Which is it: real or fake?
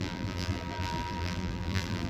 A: fake